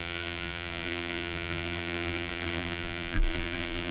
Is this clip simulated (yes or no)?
yes